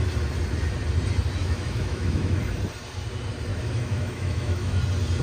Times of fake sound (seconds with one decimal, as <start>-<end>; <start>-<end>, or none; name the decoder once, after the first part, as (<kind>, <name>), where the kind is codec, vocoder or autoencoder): 1.4-2.4 (autoencoder, DAC-VAE); 3.5-4.8